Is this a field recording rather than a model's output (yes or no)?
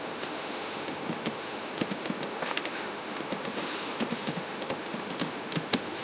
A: no